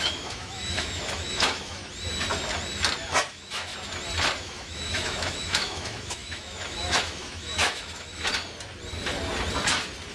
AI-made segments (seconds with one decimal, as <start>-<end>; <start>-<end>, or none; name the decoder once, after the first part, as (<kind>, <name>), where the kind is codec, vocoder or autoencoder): 0.0-1.8 (autoencoder, DAC-VAE); 3.3-3.7; 4.4-8.3